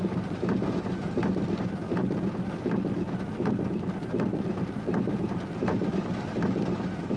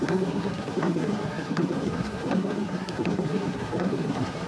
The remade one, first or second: second